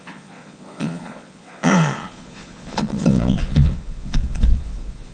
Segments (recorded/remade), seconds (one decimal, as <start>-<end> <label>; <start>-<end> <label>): 0.0-5.1 remade